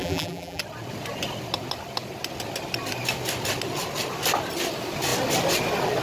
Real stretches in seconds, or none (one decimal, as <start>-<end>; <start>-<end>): 0.6-6.0